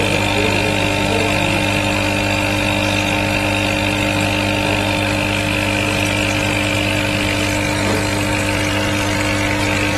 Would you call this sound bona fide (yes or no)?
yes